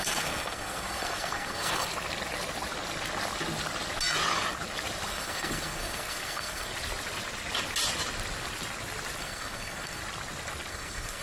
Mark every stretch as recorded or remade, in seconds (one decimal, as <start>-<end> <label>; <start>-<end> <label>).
0.0-1.9 remade; 1.9-5.1 recorded; 5.1-6.7 remade; 6.7-9.2 recorded; 9.2-10.0 remade; 10.0-10.7 recorded; 10.7-11.2 remade